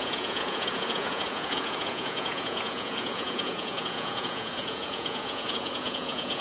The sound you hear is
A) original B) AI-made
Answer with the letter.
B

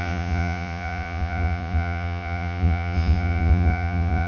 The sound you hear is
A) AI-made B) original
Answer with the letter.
A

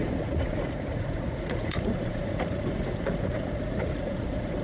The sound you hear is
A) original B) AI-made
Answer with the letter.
B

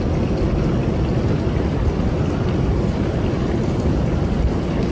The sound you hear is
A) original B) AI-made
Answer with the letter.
A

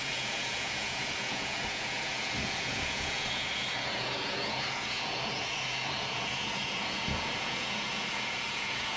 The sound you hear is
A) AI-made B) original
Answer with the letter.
A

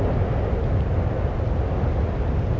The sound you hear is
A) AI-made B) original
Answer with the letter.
B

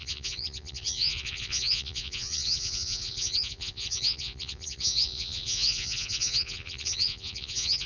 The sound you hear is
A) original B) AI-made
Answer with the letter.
B